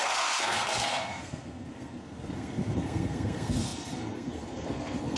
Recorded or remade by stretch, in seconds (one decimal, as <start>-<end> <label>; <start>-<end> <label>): 0.0-5.2 remade